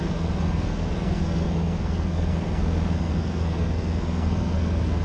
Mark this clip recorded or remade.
remade